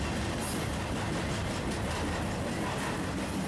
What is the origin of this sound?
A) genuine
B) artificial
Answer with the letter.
A